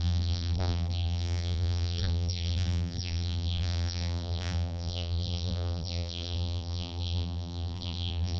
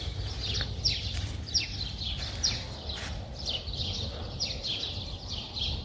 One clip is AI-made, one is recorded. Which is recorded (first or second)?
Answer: second